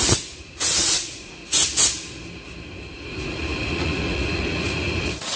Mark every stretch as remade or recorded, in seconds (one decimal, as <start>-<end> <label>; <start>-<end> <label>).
0.0-1.4 remade; 1.4-2.9 recorded; 2.9-5.4 remade